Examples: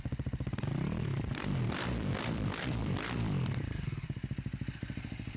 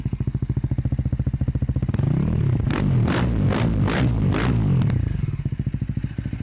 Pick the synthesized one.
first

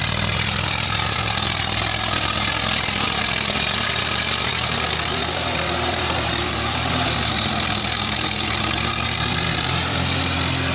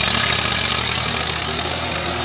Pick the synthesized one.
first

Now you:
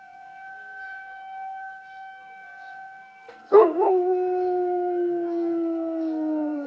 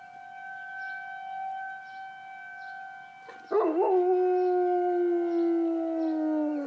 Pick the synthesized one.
first